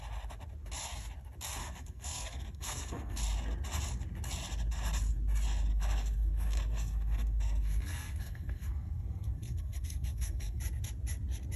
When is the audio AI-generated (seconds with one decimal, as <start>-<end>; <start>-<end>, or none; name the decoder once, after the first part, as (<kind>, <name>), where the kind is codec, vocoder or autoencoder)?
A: 1.6-3.2 (codec, SNAC); 5.7-10.6